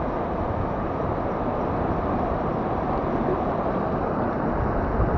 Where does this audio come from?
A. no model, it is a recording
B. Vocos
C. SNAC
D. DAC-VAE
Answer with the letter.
A